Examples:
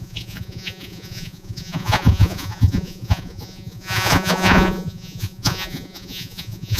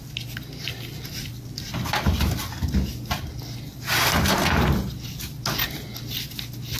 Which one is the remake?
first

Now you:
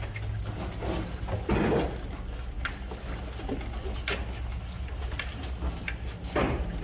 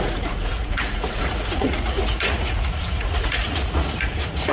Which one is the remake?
second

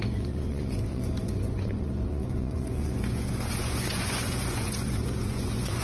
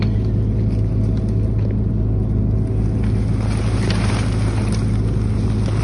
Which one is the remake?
first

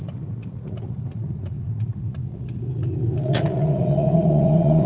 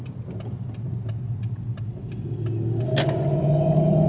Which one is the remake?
first